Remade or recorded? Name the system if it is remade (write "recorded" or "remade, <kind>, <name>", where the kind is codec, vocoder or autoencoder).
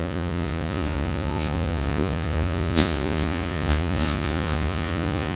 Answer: remade, vocoder, Vocos